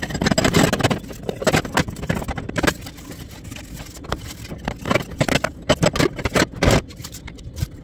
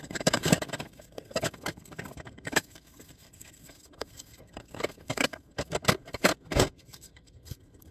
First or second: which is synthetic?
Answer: second